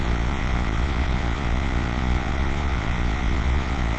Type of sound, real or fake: fake